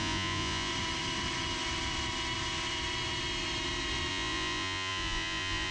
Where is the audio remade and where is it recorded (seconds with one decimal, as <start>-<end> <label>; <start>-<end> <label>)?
0.0-0.7 remade; 0.7-4.1 recorded; 4.1-5.7 remade